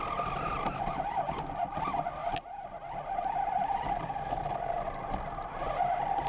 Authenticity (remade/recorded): recorded